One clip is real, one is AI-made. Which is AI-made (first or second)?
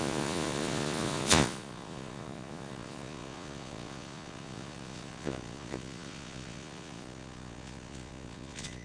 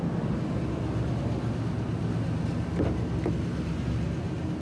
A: first